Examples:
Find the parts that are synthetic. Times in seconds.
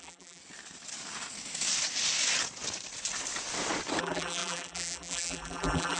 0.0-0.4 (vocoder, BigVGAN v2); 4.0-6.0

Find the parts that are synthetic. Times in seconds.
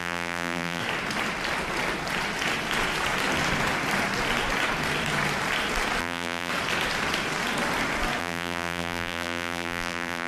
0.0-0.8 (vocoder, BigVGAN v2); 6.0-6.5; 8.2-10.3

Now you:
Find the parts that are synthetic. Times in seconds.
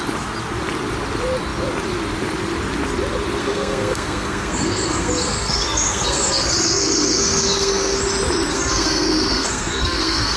3.4-8.0 (codec, SNAC); 8.5-10.4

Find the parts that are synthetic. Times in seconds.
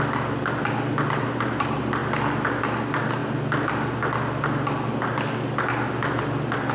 none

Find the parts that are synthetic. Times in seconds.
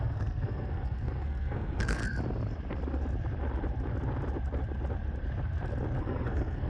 0.0-2.0 (codec, SNAC); 6.0-6.7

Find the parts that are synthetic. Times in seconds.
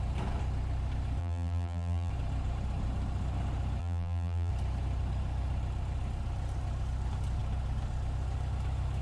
1.2-2.1 (vocoder, BigVGAN v2); 3.8-4.5